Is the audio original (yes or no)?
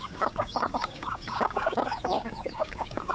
no